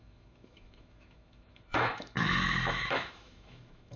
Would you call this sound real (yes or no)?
no